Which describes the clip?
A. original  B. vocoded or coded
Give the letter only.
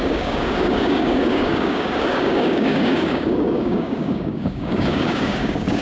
B